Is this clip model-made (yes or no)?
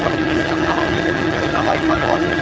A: yes